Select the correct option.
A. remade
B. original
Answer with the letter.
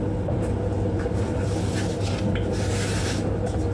B